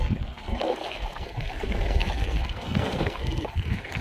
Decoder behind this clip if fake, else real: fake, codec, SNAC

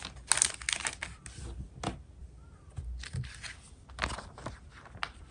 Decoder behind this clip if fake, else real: real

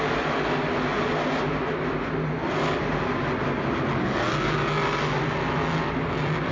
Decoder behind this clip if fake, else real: real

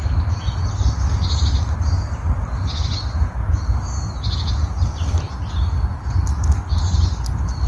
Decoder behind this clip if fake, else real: real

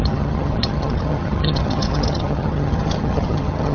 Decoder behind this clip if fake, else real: fake, vocoder, HiFi-GAN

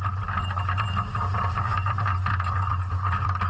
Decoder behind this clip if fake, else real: real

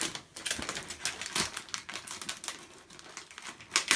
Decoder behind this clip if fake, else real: real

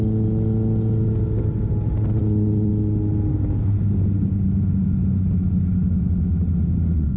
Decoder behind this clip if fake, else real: real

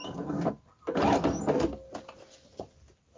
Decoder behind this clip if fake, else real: real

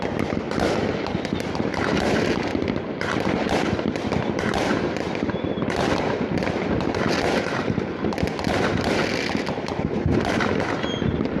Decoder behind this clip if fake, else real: real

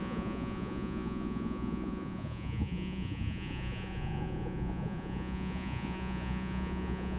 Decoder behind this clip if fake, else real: fake, vocoder, Vocos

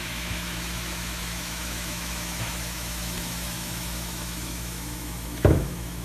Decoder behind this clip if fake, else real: fake, autoencoder, DAC-VAE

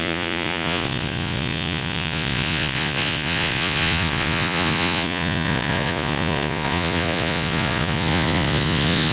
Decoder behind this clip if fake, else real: fake, vocoder, Vocos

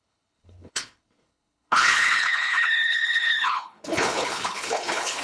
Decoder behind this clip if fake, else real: fake, codec, HILCodec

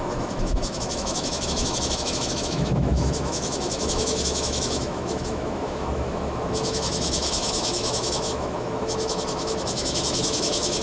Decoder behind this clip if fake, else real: fake, autoencoder, DAC-VAE